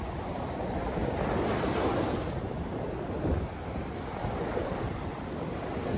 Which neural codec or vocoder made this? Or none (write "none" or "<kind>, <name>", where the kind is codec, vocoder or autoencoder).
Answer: none